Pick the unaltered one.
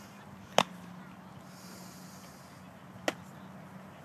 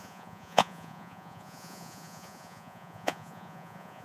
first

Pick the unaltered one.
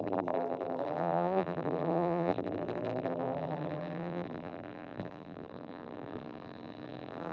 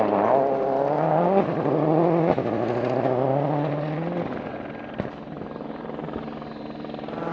second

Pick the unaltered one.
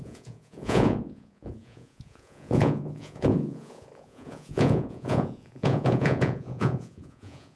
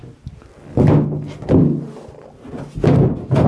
second